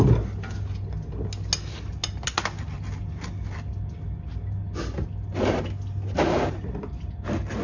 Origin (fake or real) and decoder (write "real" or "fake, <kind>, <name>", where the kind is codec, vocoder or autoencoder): real